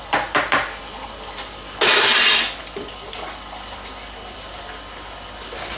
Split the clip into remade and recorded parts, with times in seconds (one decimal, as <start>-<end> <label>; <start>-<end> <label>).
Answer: 0.0-5.8 recorded